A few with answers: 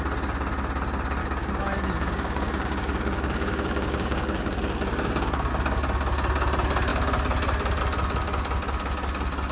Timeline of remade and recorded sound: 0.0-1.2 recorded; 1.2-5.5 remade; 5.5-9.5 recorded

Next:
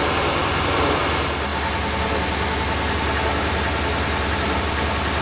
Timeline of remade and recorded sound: 0.0-5.2 recorded

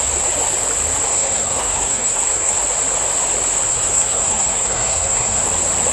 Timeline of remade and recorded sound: 0.0-1.1 recorded; 1.1-2.5 remade; 2.5-3.7 recorded; 3.7-5.4 remade; 5.4-5.9 recorded

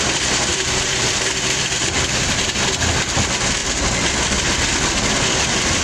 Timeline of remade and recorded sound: 0.0-0.5 recorded; 0.5-2.5 remade; 2.5-5.8 recorded